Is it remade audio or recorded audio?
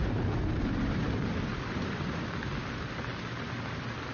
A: recorded